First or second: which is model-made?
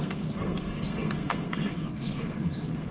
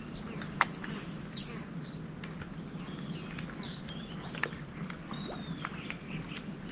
first